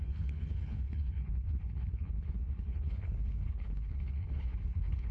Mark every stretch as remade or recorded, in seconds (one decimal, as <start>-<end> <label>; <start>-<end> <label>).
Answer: 0.0-5.1 remade